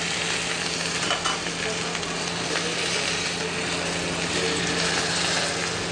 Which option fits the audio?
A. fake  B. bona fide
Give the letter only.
B